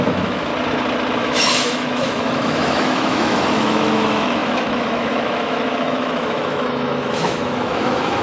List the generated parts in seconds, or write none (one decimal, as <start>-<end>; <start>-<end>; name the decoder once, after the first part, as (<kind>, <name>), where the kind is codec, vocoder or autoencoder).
0.0-0.5 (autoencoder, DAC-VAE); 1.2-8.2